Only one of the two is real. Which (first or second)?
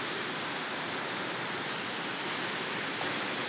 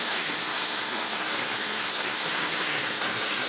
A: first